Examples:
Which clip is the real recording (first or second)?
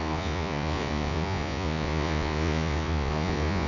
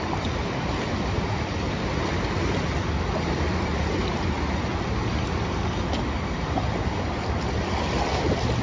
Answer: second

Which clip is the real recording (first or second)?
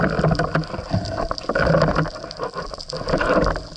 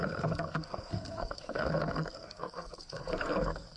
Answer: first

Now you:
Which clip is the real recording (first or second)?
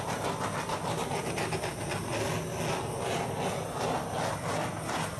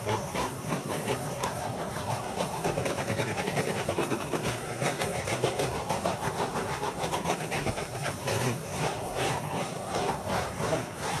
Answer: first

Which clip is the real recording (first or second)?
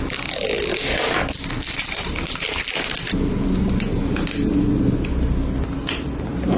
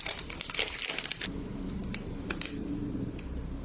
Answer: first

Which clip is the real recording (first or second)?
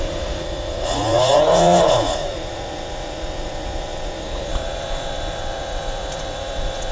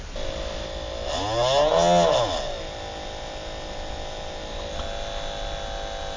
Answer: second